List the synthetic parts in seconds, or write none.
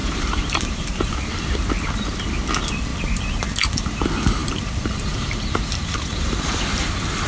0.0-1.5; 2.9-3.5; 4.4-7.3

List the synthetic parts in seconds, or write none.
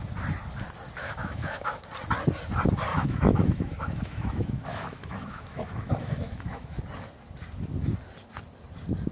1.0-1.8; 2.9-6.8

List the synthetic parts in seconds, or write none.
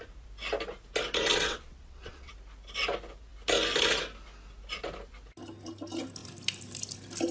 1.3-2.3